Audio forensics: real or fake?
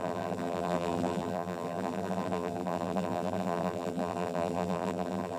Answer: fake